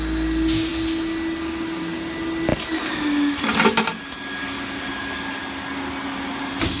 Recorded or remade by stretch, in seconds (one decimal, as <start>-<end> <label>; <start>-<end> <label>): 0.0-6.8 recorded